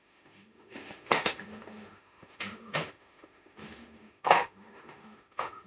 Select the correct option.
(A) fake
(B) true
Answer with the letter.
A